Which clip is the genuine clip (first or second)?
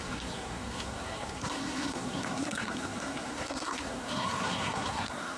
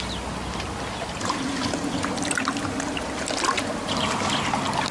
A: second